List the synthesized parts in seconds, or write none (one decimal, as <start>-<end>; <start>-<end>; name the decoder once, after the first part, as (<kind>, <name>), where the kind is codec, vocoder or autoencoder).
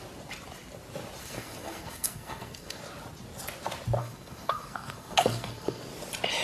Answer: 1.2-2.8 (codec, SNAC); 4.0-5.8